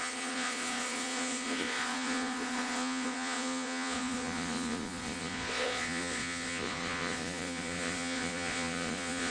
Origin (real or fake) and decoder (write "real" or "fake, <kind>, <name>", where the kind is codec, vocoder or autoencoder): fake, vocoder, Vocos